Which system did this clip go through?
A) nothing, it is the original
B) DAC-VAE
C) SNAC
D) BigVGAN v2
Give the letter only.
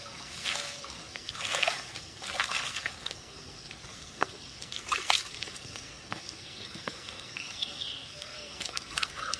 C